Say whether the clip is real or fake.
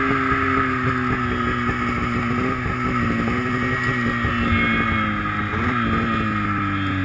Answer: real